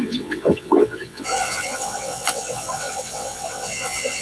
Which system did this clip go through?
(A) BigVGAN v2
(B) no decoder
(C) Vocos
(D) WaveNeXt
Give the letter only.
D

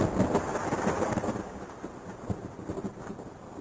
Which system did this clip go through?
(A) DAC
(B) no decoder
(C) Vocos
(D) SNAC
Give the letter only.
B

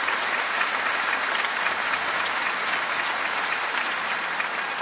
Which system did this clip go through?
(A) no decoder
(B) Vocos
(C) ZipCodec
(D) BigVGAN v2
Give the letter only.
A